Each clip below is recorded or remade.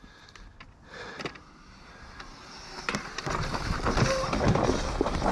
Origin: recorded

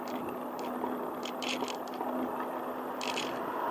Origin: recorded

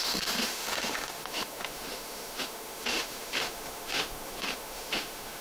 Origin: remade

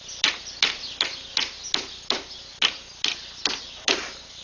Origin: recorded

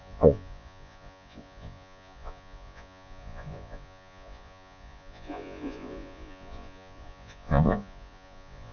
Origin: remade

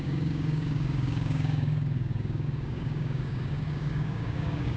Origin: remade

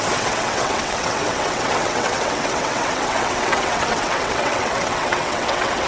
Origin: remade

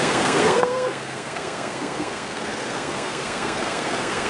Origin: remade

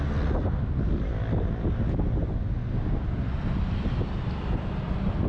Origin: recorded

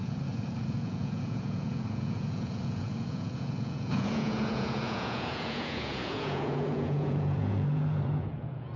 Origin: remade